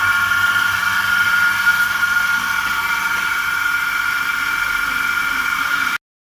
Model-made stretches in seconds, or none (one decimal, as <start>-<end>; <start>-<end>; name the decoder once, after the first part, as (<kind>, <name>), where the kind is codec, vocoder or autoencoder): none